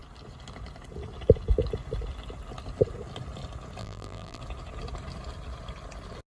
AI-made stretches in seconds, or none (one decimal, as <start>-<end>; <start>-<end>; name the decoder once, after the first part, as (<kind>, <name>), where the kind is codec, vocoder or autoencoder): 3.8-4.4 (vocoder, BigVGAN v2)

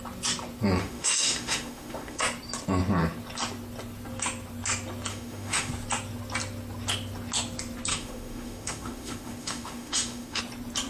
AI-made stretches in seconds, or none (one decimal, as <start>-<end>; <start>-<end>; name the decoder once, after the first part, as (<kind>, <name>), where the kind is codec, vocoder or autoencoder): 0.8-2.2 (autoencoder, DAC-VAE); 5.1-5.7; 7.9-10.4

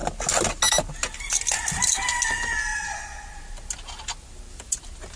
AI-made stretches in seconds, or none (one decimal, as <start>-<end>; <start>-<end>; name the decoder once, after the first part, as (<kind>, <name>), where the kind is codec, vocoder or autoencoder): 2.7-3.4 (vocoder, Vocos)

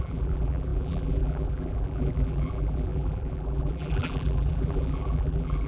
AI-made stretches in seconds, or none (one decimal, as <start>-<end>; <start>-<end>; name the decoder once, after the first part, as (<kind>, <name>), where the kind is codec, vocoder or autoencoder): 0.0-5.7 (vocoder, BigVGAN v2)